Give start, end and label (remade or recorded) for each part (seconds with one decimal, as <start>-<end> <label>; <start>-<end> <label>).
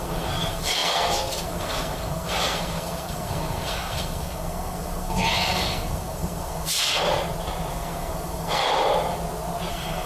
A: 0.0-7.1 remade; 7.1-7.7 recorded; 7.7-8.6 remade; 8.6-9.7 recorded; 9.7-10.1 remade